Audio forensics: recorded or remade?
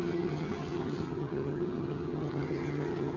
remade